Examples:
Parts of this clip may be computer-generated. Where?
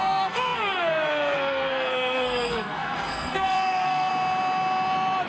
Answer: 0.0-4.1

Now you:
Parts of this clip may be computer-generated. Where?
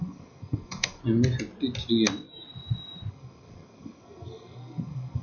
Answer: 0.0-1.0; 3.1-5.2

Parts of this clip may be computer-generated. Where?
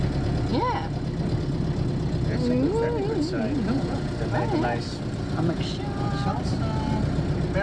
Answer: none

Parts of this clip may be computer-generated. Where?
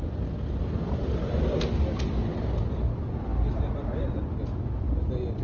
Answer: none